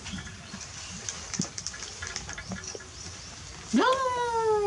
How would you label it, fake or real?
real